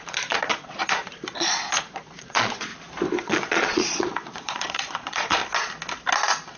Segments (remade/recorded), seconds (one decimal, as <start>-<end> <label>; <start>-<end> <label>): 0.0-2.7 remade; 2.7-3.2 recorded; 3.2-5.4 remade; 5.4-6.6 recorded